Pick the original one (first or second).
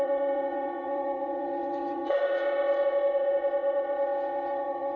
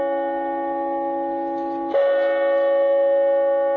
second